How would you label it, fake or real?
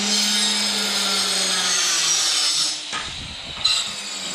real